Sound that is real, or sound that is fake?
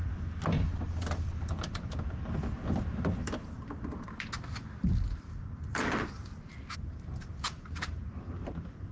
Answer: real